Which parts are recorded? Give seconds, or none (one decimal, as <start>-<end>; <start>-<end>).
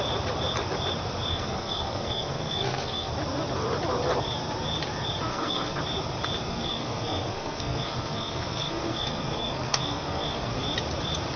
0.0-1.3; 3.1-5.3; 5.8-6.5; 10.5-11.4